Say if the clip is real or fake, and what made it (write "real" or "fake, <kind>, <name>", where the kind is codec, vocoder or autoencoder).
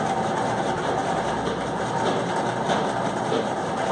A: real